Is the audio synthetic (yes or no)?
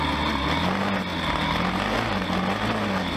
no